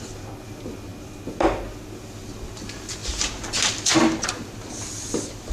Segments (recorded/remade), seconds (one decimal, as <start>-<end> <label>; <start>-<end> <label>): 0.0-5.5 recorded